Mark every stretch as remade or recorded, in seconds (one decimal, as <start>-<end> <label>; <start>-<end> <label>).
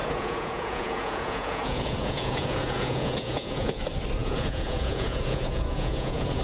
0.0-3.8 remade; 3.8-4.2 recorded; 4.2-6.4 remade